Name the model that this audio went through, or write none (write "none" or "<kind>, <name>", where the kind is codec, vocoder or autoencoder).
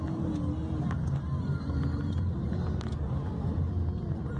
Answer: none